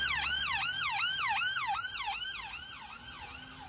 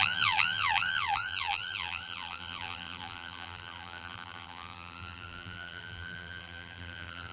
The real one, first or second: first